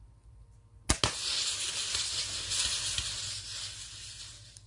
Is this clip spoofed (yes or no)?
no